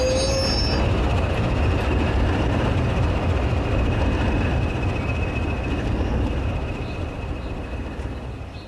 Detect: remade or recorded recorded